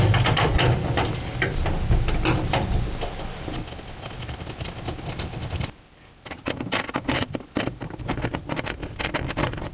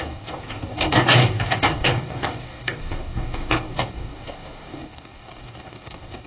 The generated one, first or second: second